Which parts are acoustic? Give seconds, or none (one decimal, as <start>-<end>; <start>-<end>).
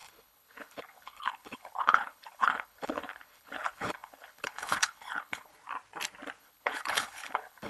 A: 5.5-6.4